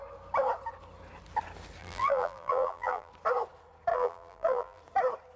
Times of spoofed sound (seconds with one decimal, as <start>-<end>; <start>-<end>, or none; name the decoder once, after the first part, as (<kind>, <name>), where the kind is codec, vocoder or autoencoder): 1.8-3.1 (vocoder, BigVGAN v2); 3.9-4.8